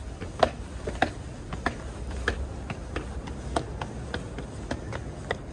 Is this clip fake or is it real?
real